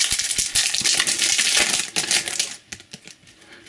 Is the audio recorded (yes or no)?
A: yes